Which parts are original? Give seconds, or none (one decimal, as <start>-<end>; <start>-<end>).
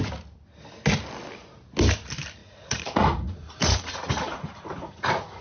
0.0-2.4